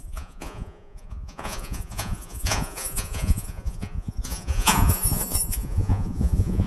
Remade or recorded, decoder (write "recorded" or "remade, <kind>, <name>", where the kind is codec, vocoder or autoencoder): remade, vocoder, Vocos